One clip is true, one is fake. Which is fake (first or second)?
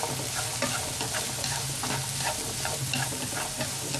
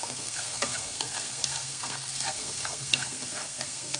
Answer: second